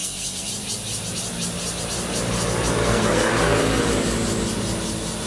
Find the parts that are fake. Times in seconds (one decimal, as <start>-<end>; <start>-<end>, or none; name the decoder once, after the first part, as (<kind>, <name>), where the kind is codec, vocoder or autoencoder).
0.0-0.5 (codec, SNAC); 2.8-3.8